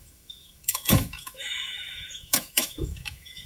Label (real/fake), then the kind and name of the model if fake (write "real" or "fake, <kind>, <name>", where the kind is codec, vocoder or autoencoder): fake, autoencoder, DAC-VAE